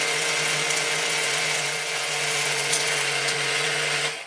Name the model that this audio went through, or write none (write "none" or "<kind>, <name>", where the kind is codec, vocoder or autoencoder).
vocoder, Vocos